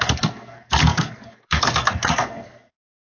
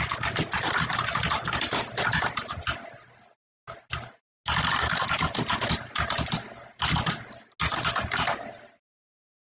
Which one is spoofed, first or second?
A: first